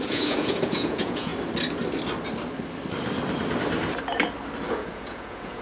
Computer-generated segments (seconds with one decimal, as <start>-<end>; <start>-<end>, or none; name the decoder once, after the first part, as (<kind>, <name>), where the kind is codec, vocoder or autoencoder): 0.0-1.3 (vocoder, Vocos); 4.7-5.6